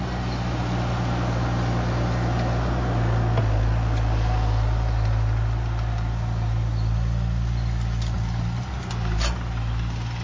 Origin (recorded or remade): recorded